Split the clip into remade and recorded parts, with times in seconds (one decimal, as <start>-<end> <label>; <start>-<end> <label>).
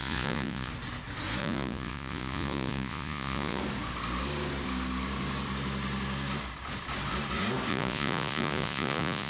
0.0-0.7 remade; 0.7-1.4 recorded; 1.4-3.6 remade; 3.6-7.7 recorded; 7.7-9.3 remade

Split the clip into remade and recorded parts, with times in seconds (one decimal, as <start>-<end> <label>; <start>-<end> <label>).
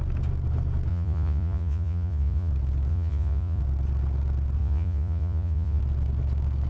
0.0-0.9 recorded; 0.9-2.5 remade; 2.5-2.9 recorded; 2.9-3.6 remade; 3.6-4.6 recorded; 4.6-5.8 remade; 5.8-6.7 recorded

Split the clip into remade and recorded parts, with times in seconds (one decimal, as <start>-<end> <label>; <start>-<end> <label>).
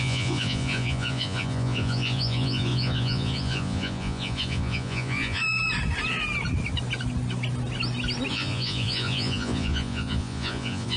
0.0-5.4 remade; 5.4-8.3 recorded; 8.3-11.0 remade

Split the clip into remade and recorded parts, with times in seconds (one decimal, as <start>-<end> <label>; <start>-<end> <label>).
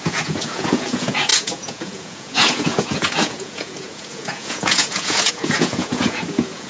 0.0-6.7 remade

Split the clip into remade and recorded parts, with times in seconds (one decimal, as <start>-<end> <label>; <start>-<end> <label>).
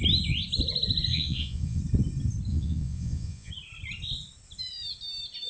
0.0-1.1 recorded; 1.1-1.8 remade; 1.8-2.5 recorded; 2.5-3.5 remade; 3.5-5.5 recorded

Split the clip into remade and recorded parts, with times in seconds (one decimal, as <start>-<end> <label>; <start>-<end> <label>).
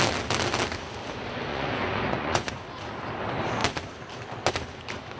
0.0-1.5 recorded; 1.5-2.5 remade; 2.5-5.2 recorded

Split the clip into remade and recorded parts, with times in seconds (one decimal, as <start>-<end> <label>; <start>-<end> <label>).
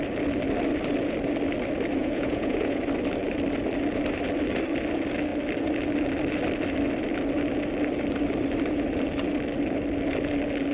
0.0-2.0 recorded; 2.0-2.8 remade; 2.8-10.7 recorded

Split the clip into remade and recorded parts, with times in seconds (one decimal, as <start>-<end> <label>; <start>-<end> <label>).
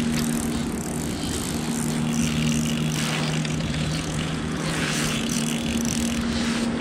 0.0-3.4 recorded; 3.4-5.4 remade; 5.4-6.8 recorded